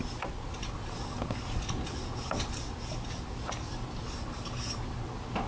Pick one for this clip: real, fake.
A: real